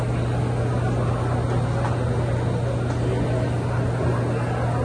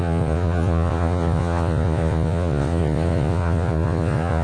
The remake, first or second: second